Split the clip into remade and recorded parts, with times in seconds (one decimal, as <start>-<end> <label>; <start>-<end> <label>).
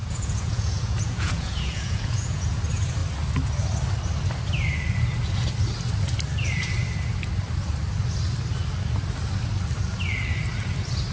0.0-2.6 remade; 2.6-11.1 recorded